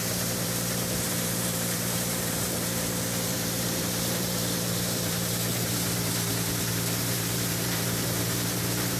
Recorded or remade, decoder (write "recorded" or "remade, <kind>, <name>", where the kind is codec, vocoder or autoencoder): remade, vocoder, BigVGAN v2